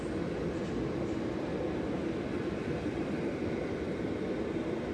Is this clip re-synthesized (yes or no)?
no